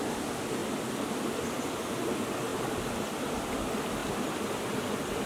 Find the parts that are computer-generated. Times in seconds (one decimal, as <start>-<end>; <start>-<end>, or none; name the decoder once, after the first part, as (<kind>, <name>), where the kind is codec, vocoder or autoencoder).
none